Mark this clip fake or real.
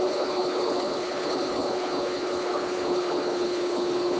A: fake